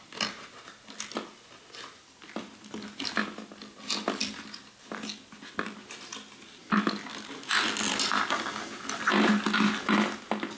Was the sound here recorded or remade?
recorded